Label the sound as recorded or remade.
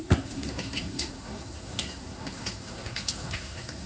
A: remade